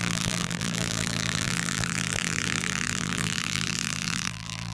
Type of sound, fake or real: fake